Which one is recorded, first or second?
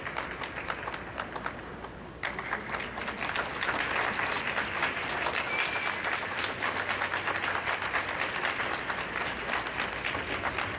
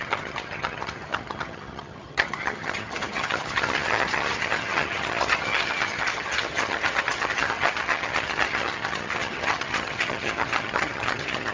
first